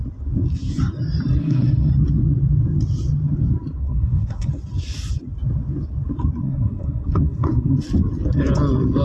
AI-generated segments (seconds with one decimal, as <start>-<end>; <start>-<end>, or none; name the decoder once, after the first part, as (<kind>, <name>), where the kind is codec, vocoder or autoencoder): 1.4-1.9 (codec, SNAC); 3.8-4.5; 6.4-7.8